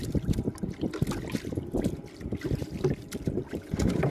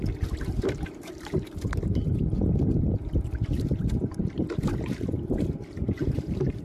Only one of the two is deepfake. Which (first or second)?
second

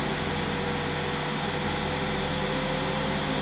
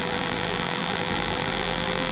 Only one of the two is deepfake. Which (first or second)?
second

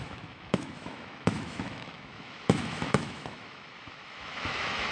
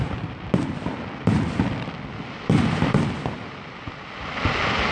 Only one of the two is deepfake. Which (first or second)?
first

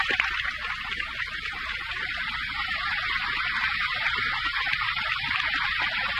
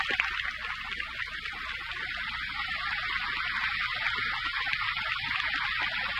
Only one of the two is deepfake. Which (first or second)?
first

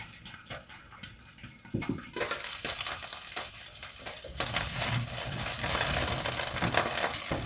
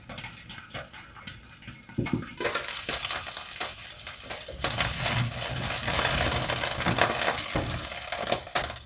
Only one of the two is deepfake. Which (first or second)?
first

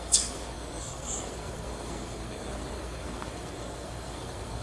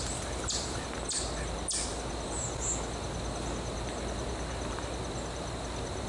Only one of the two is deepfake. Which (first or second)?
first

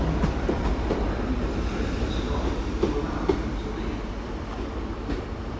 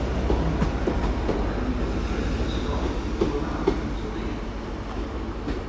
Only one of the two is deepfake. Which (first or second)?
first